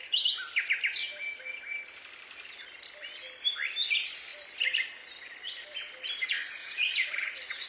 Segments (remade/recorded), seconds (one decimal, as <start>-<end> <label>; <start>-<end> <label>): 0.0-6.6 recorded; 6.6-7.7 remade